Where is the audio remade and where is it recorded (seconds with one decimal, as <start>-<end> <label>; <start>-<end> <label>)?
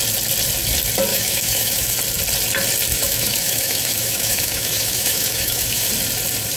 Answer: 0.0-1.1 recorded; 1.1-2.0 remade; 2.0-2.9 recorded; 2.9-5.9 remade; 5.9-6.6 recorded